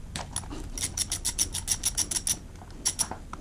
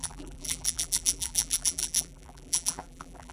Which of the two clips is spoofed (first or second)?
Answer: second